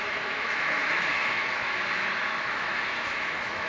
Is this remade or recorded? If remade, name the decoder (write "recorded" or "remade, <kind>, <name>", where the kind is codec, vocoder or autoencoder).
remade, autoencoder, DAC-VAE